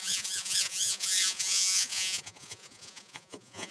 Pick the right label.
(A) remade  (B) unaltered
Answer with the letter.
A